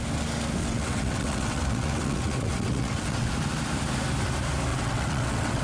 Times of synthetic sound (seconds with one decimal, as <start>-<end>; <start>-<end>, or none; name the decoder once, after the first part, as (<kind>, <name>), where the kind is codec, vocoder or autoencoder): 0.6-3.3 (vocoder, WaveNeXt); 4.7-5.6